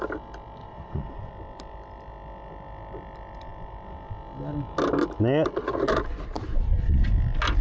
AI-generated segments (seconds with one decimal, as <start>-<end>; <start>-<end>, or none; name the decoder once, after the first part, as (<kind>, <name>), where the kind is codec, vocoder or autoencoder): 0.6-1.3 (vocoder, Vocos); 6.5-7.1